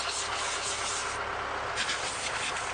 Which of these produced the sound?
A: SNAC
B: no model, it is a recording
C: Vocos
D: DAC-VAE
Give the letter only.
B